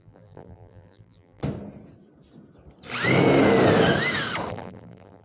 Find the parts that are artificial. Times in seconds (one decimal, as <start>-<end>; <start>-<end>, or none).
0.0-1.4; 4.5-5.2

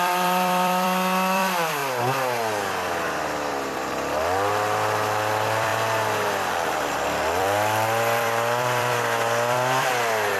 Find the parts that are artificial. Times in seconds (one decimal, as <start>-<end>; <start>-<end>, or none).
0.0-1.8; 3.5-10.4

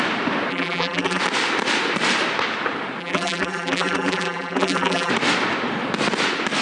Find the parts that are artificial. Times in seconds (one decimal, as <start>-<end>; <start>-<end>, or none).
0.5-1.2; 3.0-5.1

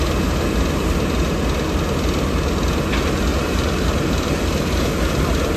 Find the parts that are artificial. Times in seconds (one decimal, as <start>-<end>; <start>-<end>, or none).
3.3-4.8

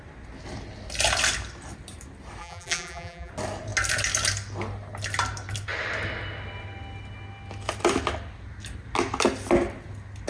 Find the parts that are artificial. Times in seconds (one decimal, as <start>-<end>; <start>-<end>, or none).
2.4-3.3

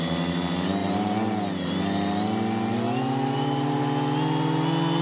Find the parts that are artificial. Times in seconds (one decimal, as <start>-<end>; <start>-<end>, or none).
0.8-3.8